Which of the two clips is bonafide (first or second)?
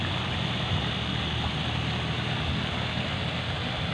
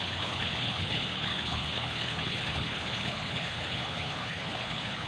first